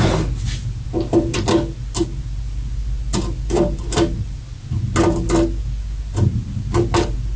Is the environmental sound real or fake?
real